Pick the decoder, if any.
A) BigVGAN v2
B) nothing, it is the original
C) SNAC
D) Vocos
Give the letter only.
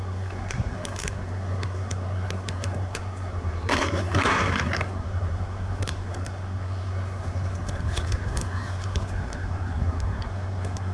C